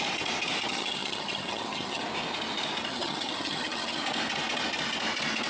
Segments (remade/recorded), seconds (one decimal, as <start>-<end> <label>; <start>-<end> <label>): 0.0-0.7 recorded; 0.7-2.0 remade; 2.0-2.9 recorded; 2.9-4.0 remade; 4.0-5.5 recorded